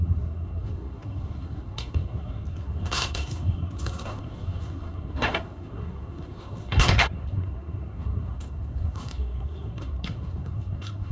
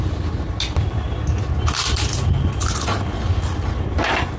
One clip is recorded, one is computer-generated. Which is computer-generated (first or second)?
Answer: first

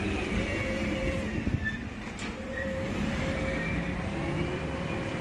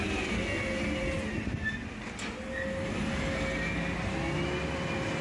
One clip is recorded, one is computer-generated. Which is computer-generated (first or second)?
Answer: first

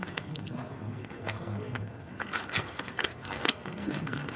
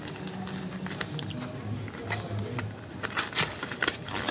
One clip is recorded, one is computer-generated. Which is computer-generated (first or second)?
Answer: first